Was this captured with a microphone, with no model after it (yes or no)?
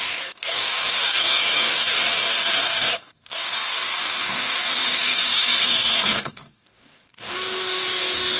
no